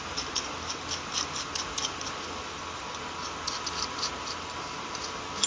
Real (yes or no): yes